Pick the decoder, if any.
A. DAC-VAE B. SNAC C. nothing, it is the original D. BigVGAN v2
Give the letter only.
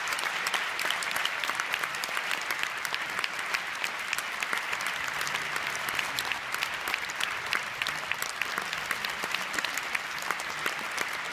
C